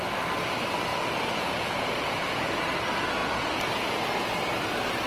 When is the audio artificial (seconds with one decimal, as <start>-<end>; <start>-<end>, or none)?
0.9-2.7; 3.2-3.7